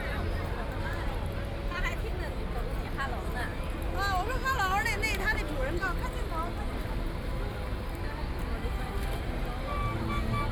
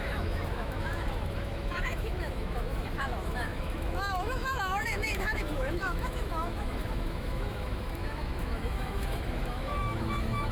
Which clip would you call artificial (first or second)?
second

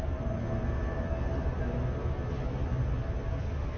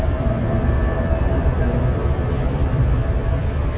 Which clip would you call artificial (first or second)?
second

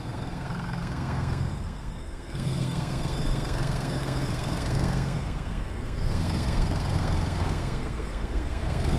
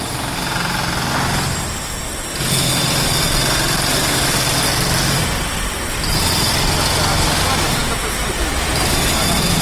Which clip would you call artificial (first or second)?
first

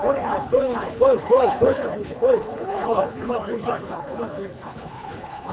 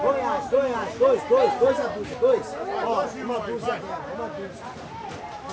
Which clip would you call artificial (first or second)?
first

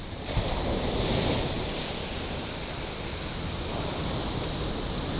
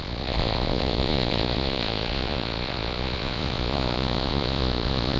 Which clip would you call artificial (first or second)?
second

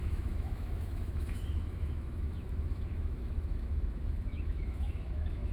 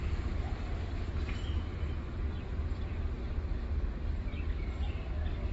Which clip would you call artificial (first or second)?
first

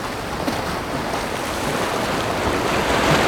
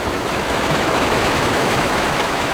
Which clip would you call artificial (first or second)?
second